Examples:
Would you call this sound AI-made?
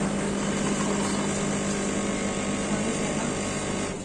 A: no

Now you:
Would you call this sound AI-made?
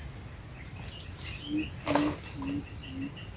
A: no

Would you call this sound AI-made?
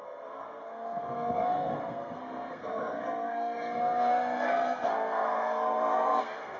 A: yes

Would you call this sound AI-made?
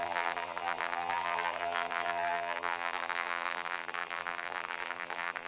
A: yes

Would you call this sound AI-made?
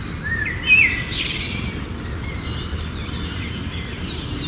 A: no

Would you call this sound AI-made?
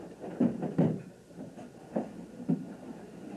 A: no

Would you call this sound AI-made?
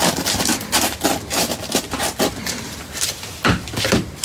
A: no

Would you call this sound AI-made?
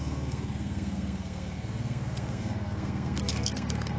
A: yes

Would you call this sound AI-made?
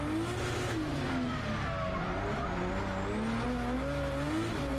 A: no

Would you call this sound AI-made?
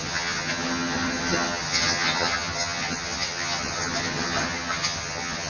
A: yes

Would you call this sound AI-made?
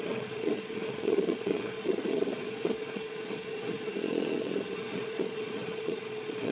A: yes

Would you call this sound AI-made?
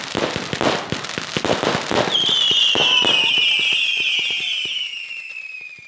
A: no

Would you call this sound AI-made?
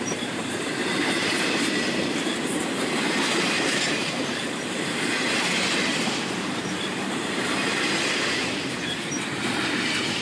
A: yes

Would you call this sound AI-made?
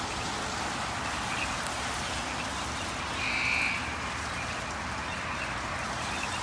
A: no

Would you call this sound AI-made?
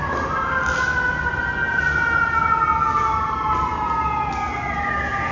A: no